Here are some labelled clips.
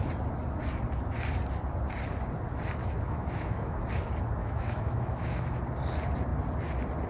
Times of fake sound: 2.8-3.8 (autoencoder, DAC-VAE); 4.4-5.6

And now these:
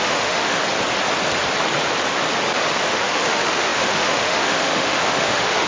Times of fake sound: 0.0-0.6 (autoencoder, DAC-VAE); 2.9-5.7

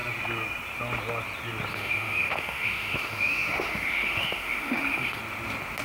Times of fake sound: 1.7-5.2 (autoencoder, DAC-VAE)

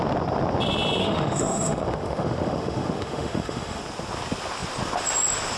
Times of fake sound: 1.0-3.8 (autoencoder, DAC-VAE)

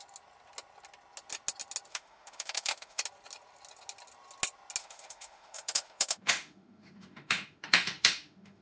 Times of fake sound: 1.9-3.0 (autoencoder, DAC-VAE); 4.8-8.6

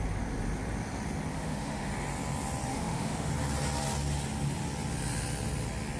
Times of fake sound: 1.3-1.9 (autoencoder, DAC-VAE); 2.7-3.3

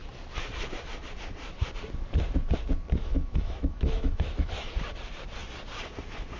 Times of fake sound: 3.1-4.7 (autoencoder, DAC-VAE)

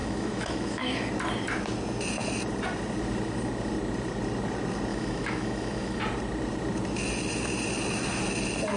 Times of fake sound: 0.0-1.1 (autoencoder, DAC-VAE); 4.9-6.0